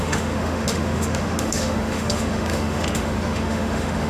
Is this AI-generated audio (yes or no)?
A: yes